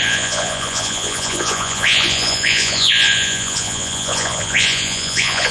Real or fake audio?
fake